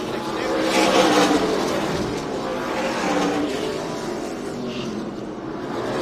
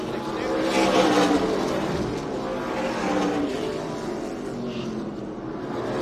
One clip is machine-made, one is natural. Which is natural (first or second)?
second